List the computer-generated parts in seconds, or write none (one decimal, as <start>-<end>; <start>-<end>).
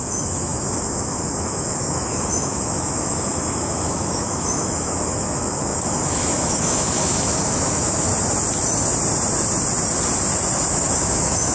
0.0-8.1; 10.7-11.5